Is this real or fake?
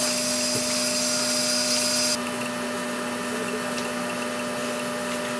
real